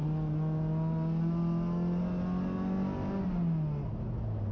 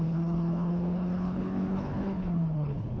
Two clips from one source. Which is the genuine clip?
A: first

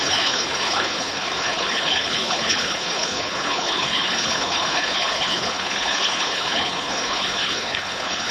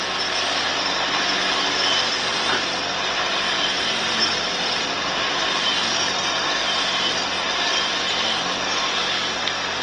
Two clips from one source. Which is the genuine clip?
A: second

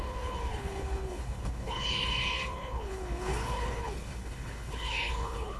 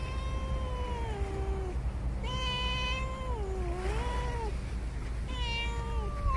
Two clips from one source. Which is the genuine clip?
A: second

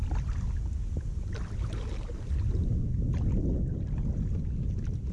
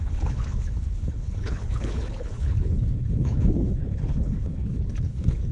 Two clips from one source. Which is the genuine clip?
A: first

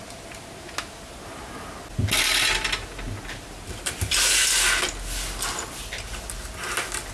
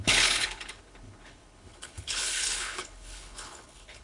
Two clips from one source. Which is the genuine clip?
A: first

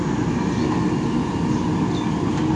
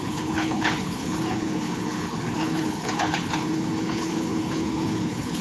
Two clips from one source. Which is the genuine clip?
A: first